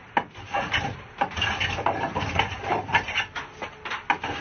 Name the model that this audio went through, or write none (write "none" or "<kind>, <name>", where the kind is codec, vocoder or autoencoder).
none